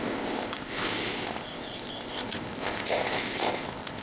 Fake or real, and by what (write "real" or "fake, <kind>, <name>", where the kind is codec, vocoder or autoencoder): fake, codec, ZipCodec